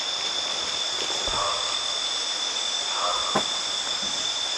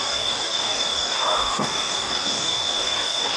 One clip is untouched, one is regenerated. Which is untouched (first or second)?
first